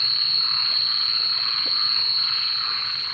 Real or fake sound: fake